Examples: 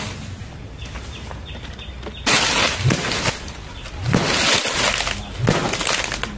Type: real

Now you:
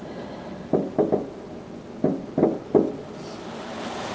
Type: real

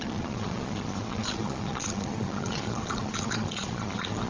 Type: fake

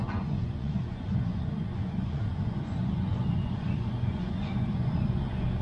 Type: fake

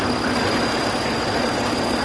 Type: real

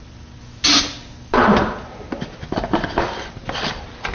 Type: real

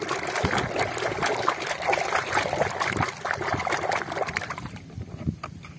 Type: real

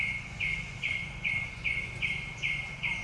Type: fake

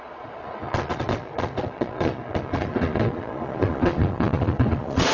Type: fake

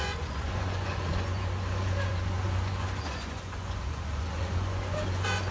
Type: fake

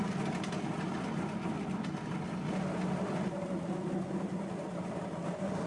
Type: real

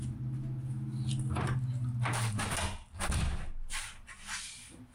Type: real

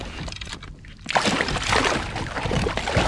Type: real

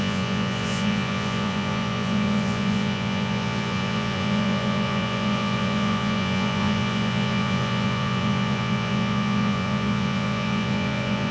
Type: fake